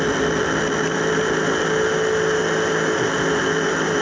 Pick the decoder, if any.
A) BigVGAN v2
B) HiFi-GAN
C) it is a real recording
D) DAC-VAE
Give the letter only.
C